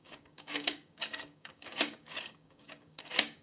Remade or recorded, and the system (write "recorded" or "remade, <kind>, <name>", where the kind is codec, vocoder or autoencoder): remade, codec, DAC